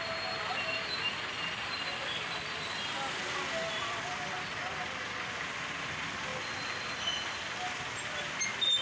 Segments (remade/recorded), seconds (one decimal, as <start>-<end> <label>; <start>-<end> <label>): 0.0-8.8 recorded